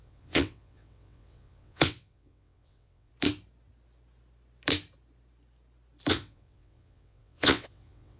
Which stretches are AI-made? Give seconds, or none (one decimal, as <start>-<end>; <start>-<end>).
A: 0.0-3.1; 6.1-8.2